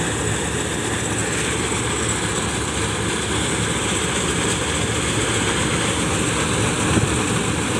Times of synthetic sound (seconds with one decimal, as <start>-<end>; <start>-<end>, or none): none